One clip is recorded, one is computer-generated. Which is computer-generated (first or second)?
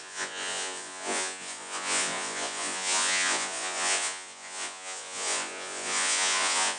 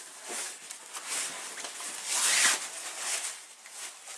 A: first